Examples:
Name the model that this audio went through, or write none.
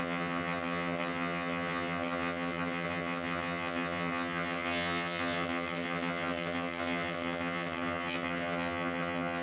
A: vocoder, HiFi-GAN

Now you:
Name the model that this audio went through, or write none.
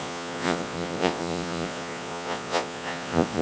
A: vocoder, Vocos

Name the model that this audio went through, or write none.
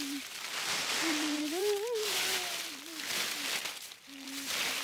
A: vocoder, BigVGAN v2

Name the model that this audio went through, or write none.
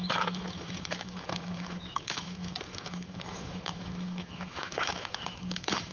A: autoencoder, DAC-VAE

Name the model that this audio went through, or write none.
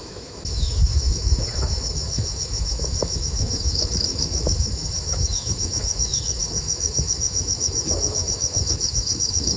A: autoencoder, DAC-VAE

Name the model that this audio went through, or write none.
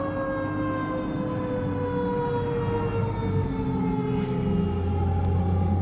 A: none